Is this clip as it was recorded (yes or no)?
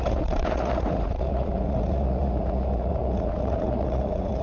no